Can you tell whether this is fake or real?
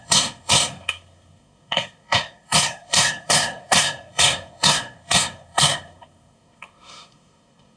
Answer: fake